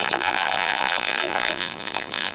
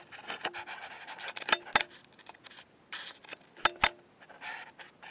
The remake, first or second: first